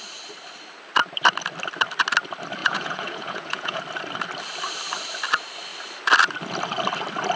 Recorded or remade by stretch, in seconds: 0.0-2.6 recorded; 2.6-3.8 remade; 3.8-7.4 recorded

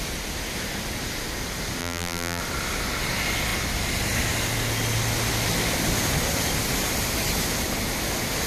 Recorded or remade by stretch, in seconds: 0.0-1.8 recorded; 1.8-2.4 remade; 2.4-8.5 recorded

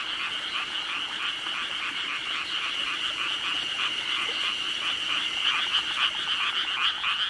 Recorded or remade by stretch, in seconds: 0.0-2.2 recorded; 2.2-2.8 remade; 2.8-7.3 recorded

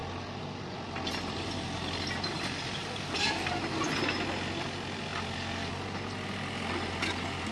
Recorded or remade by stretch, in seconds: 0.0-3.5 remade; 3.5-5.1 recorded; 5.1-5.7 remade; 5.7-7.5 recorded

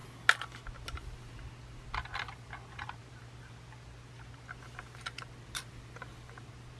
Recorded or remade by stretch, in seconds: 0.0-6.8 recorded

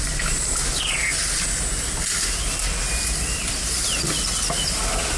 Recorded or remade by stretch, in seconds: 0.0-5.2 recorded

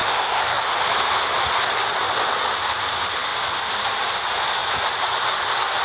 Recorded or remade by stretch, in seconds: 0.0-0.6 remade; 0.6-5.8 recorded